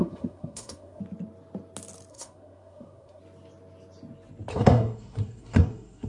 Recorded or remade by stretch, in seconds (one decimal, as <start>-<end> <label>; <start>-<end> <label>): 0.0-1.0 remade; 1.0-2.1 recorded; 2.1-3.2 remade; 3.2-4.5 recorded; 4.5-6.1 remade